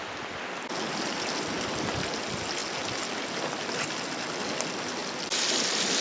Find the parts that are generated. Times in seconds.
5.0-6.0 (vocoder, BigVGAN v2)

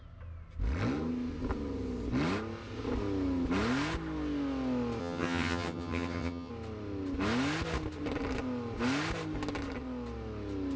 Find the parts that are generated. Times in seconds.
5.0-6.5 (vocoder, HiFi-GAN)